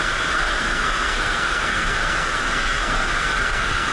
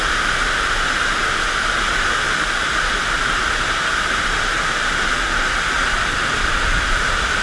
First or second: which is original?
second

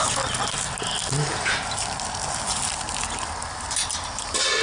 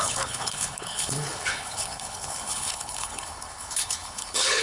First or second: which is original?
first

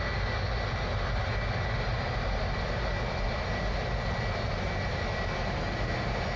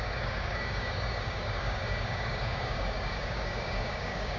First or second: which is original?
first